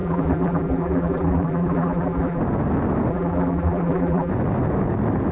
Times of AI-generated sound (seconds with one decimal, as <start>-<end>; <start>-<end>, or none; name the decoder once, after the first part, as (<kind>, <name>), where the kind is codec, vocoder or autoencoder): 0.0-2.4 (vocoder, BigVGAN v2); 3.1-4.3